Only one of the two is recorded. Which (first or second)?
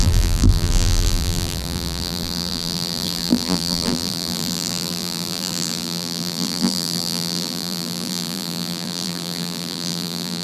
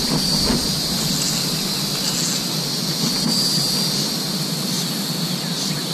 second